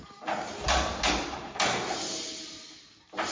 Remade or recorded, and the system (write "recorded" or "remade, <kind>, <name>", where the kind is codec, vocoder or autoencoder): recorded